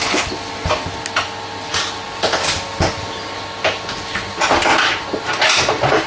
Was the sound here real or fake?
real